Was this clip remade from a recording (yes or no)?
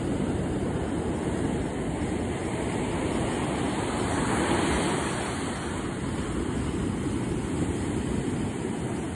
no